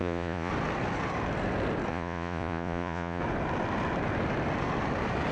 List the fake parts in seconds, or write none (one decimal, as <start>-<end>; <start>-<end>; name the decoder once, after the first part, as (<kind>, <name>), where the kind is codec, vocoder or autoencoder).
0.0-0.5 (vocoder, Vocos); 1.9-3.2